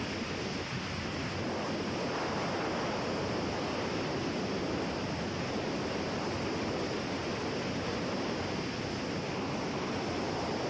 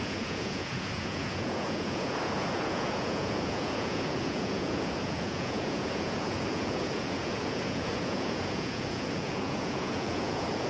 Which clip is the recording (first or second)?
first